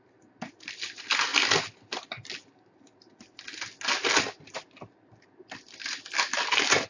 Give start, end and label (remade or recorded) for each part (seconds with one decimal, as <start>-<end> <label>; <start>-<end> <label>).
0.0-6.9 recorded